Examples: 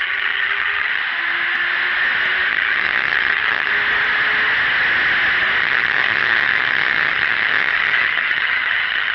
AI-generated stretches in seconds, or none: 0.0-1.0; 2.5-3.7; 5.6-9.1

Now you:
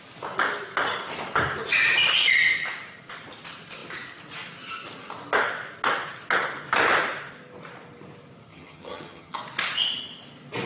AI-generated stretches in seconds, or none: 8.5-9.4

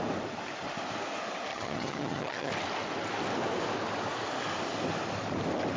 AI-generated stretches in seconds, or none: 1.5-2.5

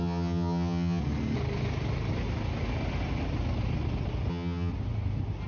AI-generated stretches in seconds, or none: 0.0-1.0; 4.3-4.7

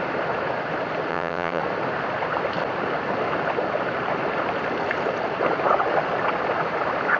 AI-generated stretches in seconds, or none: 1.1-1.6

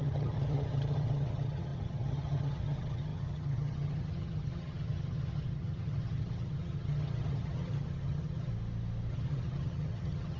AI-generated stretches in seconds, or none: 0.0-8.5; 9.1-10.4

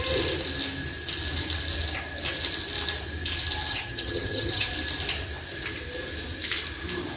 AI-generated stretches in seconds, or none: 3.7-4.7

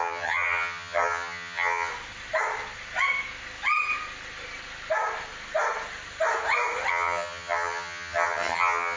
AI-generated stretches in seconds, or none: 0.0-1.9; 6.9-9.0